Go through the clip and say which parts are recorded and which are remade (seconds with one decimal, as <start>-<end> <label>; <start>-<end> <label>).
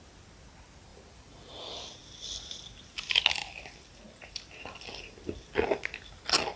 0.0-0.9 recorded; 0.9-1.5 remade; 1.5-3.4 recorded; 3.4-4.6 remade; 4.6-6.6 recorded